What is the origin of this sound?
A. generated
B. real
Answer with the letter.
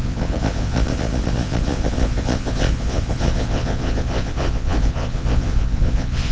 A